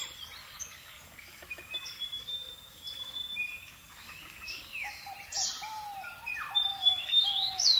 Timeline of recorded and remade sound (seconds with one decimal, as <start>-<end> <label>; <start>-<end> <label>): 0.0-0.4 recorded; 0.4-5.1 remade; 5.1-6.7 recorded; 6.7-7.8 remade